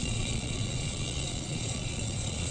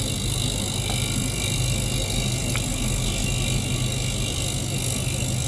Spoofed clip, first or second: first